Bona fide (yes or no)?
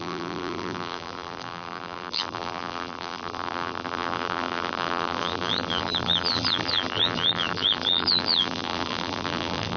no